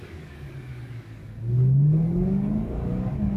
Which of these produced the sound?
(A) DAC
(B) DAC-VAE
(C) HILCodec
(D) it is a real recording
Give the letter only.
A